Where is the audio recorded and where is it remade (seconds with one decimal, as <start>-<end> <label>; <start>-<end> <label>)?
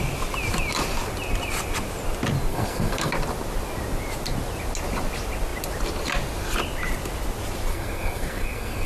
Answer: 0.0-2.5 recorded; 2.5-3.1 remade; 3.1-7.7 recorded; 7.7-8.9 remade